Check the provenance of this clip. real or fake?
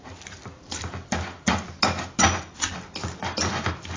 real